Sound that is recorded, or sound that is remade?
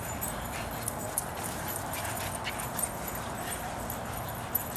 recorded